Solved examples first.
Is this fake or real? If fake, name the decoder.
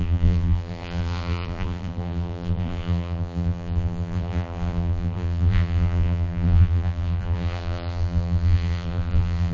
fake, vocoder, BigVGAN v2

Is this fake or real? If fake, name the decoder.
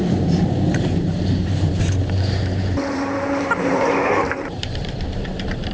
fake, vocoder, BigVGAN v2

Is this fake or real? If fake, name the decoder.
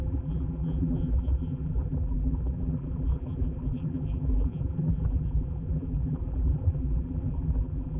fake, vocoder, BigVGAN v2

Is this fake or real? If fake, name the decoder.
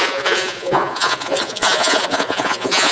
fake, vocoder, Vocos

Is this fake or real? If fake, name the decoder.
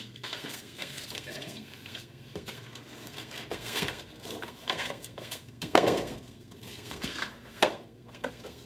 fake, codec, SNAC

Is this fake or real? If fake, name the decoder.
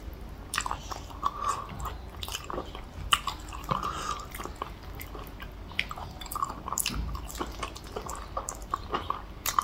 real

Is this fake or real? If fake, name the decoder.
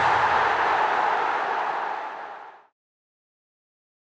real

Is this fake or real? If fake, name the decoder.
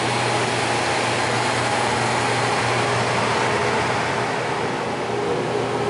real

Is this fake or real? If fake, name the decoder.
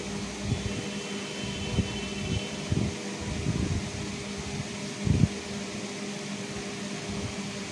real